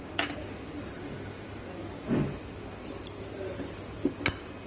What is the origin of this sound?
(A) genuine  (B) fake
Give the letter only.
A